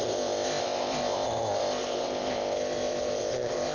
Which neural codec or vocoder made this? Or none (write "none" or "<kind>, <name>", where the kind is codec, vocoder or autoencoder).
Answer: codec, ZipCodec